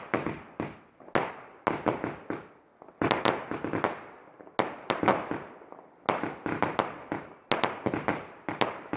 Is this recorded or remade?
recorded